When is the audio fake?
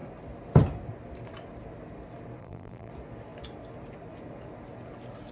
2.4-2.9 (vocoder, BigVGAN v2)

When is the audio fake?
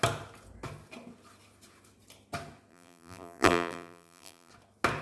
2.7-4.5 (vocoder, BigVGAN v2)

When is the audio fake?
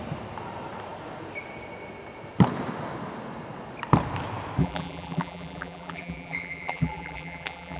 4.6-7.8 (vocoder, BigVGAN v2)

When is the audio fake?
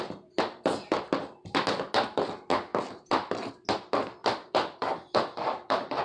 4.2-6.0 (vocoder, BigVGAN v2)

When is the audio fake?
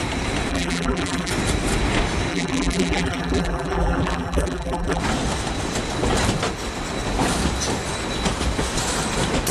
0.5-1.3 (vocoder, BigVGAN v2); 2.3-5.0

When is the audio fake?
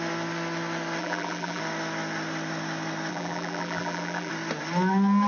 1.0-1.6 (vocoder, BigVGAN v2); 3.1-4.3